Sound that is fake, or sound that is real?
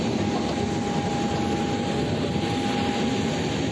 real